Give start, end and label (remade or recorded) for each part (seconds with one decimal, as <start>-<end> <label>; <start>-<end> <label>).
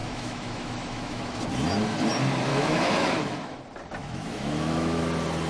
0.0-1.4 remade; 1.4-2.5 recorded; 2.5-3.6 remade; 3.6-4.0 recorded; 4.0-5.0 remade; 5.0-5.5 recorded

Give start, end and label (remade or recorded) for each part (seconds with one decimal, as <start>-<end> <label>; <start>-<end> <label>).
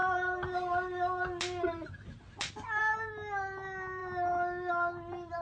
0.0-5.4 recorded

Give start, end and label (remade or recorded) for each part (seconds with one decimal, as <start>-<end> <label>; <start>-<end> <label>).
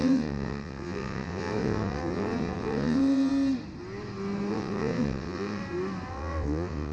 0.0-3.3 remade; 3.3-4.5 recorded; 4.5-5.6 remade; 5.6-6.1 recorded; 6.1-6.9 remade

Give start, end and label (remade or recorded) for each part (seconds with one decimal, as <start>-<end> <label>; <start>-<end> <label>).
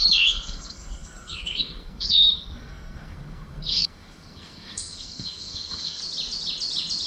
0.0-6.0 remade; 6.0-7.1 recorded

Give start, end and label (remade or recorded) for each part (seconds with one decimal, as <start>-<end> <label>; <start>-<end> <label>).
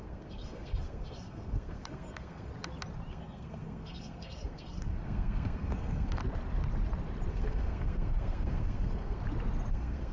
0.0-2.5 remade; 2.5-3.1 recorded; 3.1-6.2 remade; 6.2-7.3 recorded; 7.3-9.2 remade; 9.2-9.7 recorded; 9.7-10.1 remade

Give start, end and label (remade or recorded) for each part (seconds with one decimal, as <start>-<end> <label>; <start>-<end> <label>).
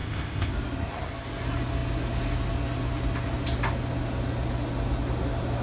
0.0-0.5 remade; 0.5-5.6 recorded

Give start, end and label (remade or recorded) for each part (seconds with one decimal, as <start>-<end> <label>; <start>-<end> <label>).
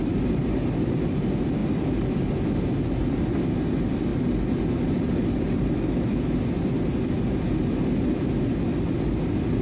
0.0-9.6 recorded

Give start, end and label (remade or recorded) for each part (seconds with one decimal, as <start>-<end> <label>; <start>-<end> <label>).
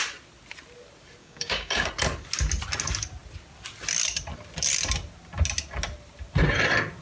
0.0-1.2 recorded; 1.2-1.9 remade; 1.9-7.0 recorded